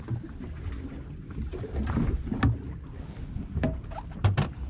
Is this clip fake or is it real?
real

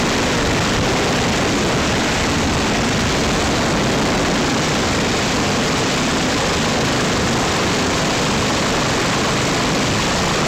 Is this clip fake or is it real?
real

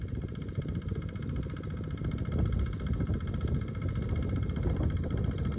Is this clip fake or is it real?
real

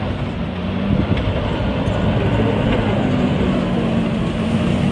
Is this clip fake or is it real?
fake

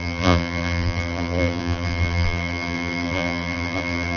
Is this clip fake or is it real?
fake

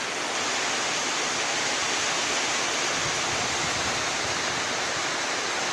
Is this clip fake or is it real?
real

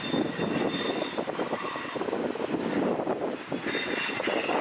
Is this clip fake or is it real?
real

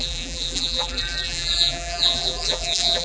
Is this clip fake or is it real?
fake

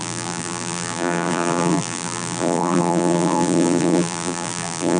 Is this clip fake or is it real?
fake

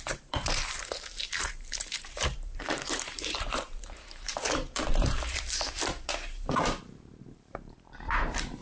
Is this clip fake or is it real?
fake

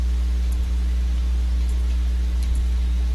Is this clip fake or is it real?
real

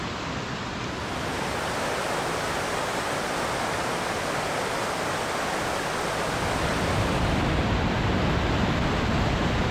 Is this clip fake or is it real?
real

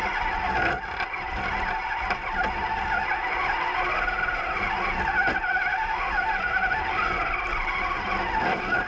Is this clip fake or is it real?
real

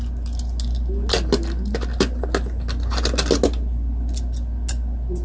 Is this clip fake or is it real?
real